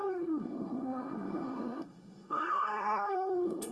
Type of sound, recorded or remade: remade